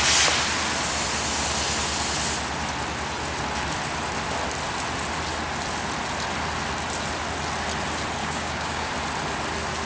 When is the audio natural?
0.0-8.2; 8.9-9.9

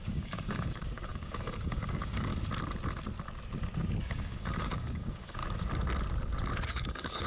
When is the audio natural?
2.3-4.0; 5.4-6.7

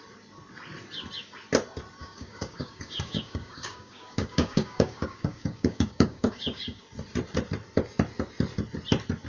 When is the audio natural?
0.0-2.0; 6.8-9.3